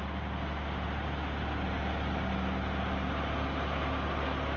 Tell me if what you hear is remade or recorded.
recorded